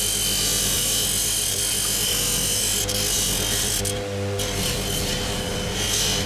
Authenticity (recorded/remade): recorded